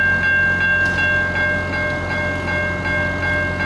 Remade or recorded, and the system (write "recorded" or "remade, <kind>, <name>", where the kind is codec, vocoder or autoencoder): recorded